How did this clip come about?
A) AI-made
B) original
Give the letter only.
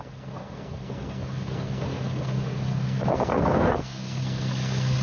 A